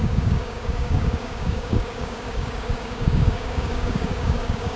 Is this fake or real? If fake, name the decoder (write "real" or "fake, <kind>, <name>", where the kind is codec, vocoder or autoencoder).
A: fake, codec, DAC